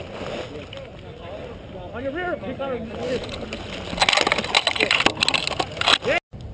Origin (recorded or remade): recorded